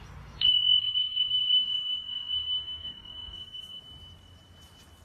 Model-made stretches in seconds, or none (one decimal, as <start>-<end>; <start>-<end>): 0.8-3.8